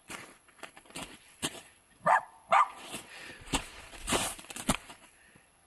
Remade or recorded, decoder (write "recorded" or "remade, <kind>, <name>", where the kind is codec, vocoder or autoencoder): remade, vocoder, Vocos